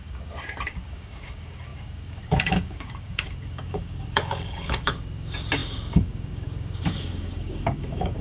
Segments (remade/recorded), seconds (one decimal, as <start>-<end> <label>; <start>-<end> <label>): 0.0-8.2 remade